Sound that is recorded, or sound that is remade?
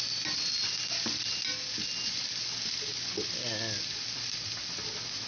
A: recorded